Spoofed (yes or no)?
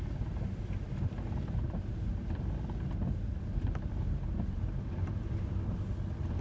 no